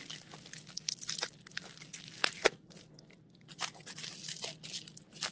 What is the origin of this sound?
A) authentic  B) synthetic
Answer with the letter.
A